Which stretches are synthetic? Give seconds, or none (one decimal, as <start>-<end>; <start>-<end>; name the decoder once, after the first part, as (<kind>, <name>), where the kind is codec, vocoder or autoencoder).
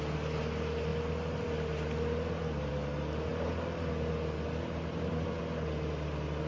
none